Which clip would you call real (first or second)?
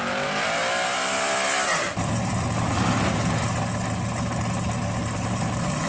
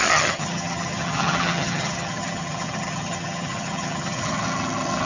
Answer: first